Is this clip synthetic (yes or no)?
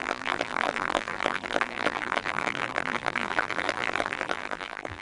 yes